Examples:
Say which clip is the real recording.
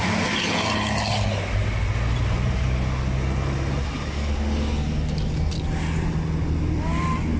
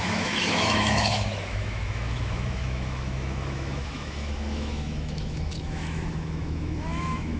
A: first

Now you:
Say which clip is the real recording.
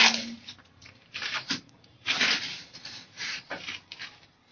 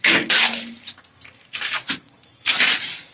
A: second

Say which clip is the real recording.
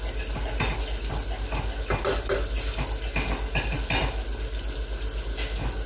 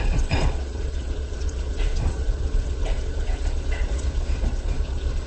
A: first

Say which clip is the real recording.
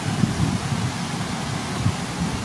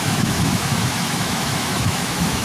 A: first